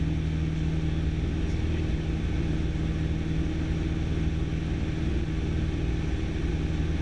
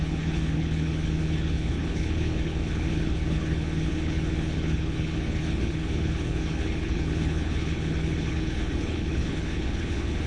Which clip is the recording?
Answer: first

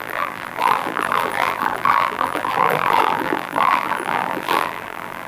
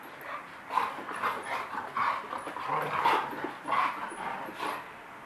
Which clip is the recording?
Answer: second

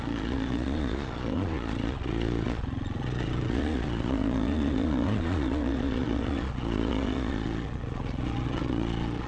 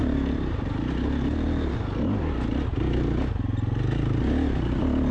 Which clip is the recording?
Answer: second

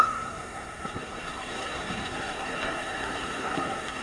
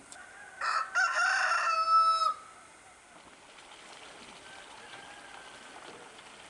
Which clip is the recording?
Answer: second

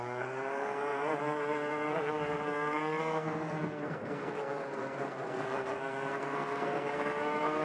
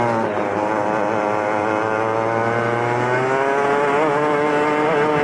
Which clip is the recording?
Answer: second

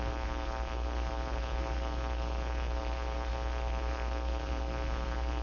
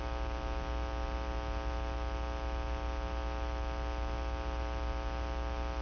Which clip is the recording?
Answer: second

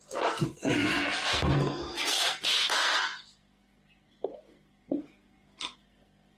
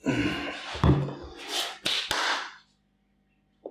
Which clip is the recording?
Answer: second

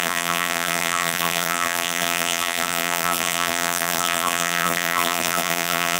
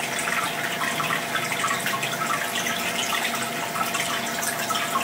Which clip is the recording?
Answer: second